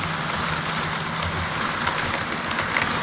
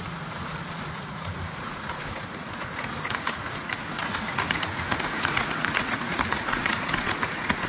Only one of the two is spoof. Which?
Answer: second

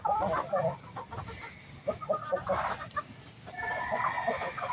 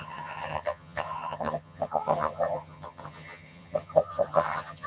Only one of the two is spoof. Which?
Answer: second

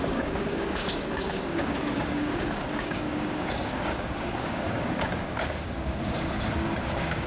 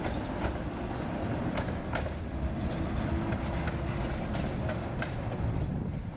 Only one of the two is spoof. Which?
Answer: first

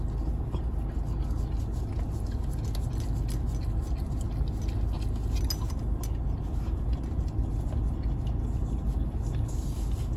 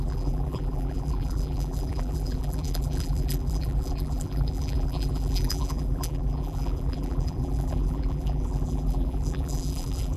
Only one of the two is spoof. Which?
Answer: second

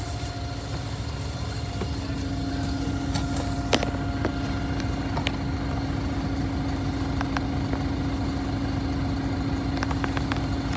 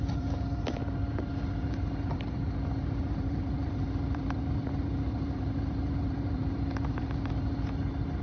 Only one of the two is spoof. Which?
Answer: second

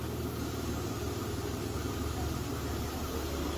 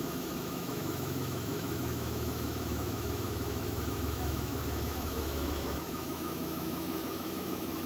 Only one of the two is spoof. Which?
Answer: second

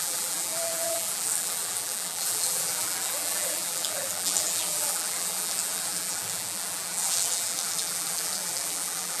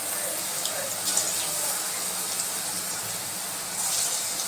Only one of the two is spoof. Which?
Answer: first